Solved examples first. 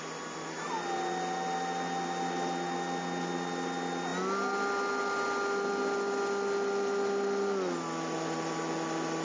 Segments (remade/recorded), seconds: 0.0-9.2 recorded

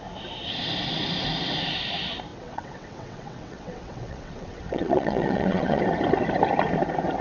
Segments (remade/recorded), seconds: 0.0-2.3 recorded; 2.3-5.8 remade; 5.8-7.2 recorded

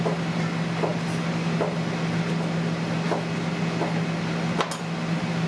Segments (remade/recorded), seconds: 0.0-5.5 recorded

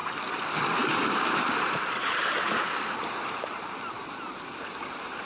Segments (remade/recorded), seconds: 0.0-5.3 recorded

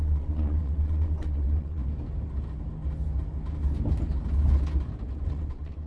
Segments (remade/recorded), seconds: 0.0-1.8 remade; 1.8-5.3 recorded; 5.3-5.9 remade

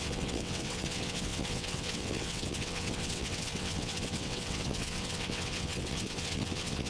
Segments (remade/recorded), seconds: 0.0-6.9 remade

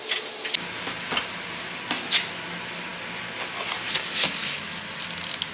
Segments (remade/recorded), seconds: 0.0-5.5 recorded

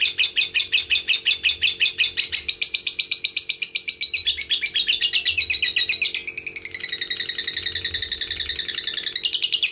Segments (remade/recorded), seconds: 0.0-9.7 recorded